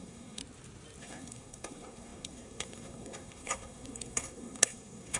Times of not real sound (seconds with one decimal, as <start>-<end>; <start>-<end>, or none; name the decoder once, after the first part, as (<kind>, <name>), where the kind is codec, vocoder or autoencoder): 0.0-0.4 (codec, SNAC); 1.0-5.2